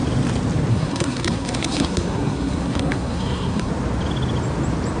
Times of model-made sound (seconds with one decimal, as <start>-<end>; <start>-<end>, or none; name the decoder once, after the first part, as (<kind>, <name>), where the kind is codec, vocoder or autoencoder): 0.7-3.7 (codec, SNAC)